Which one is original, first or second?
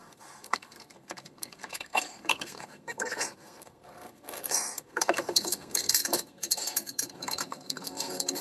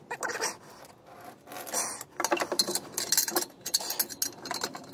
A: second